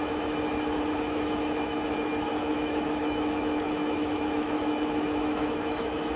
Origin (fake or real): fake